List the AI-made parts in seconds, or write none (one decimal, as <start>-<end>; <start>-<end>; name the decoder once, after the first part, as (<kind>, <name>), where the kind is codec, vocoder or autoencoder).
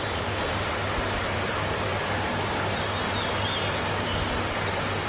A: 1.9-5.1 (vocoder, BigVGAN v2)